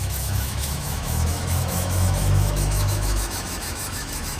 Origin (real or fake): fake